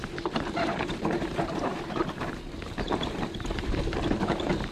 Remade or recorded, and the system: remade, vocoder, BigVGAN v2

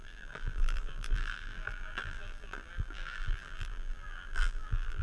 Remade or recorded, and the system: remade, vocoder, BigVGAN v2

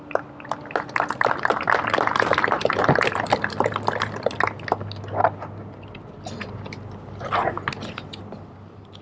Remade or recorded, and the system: recorded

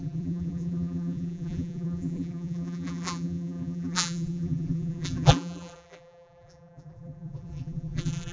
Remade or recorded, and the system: remade, vocoder, BigVGAN v2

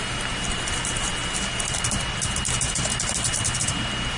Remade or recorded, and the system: remade, vocoder, BigVGAN v2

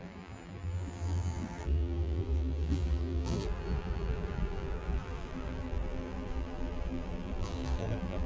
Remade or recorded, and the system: remade, vocoder, BigVGAN v2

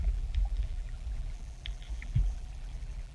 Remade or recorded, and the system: remade, vocoder, BigVGAN v2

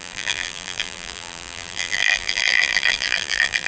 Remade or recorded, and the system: remade, vocoder, BigVGAN v2